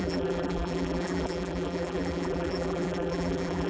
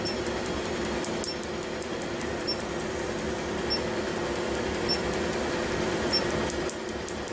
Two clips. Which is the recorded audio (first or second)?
second